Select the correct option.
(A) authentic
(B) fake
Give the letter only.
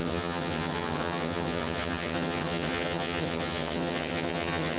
B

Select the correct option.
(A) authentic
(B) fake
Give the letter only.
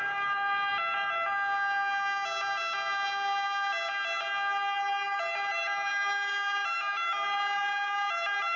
A